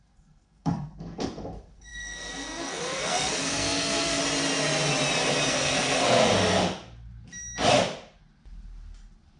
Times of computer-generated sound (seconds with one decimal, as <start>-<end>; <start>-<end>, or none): 0.0-4.2; 5.5-6.2